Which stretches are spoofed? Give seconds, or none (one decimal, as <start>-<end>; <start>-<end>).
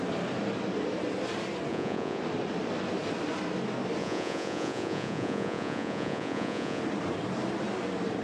1.7-2.2; 4.0-6.8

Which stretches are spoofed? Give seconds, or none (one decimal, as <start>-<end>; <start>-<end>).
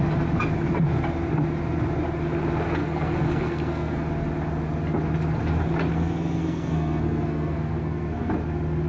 2.8-4.0; 5.9-8.3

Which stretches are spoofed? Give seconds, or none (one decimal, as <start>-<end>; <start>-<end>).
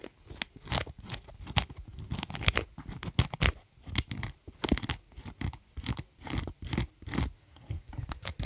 7.4-7.9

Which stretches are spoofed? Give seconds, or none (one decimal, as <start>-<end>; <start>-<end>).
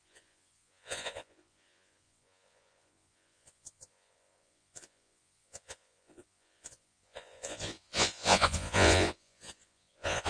0.0-10.3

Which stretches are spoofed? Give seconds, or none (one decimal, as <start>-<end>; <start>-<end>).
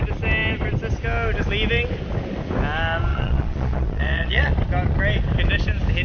3.1-4.5